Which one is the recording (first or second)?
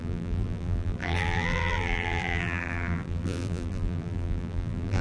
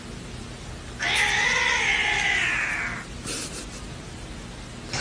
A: second